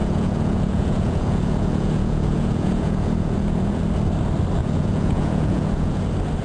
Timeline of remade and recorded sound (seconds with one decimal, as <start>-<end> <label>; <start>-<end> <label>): 0.0-3.8 remade; 3.8-4.6 recorded; 4.6-6.0 remade; 6.0-6.4 recorded